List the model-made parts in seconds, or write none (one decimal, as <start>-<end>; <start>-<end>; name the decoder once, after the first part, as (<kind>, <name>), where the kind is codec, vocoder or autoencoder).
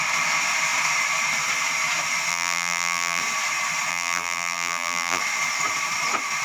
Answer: 2.3-3.2 (vocoder, BigVGAN v2); 3.9-5.2